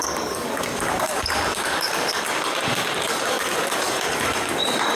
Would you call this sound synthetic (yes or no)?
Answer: yes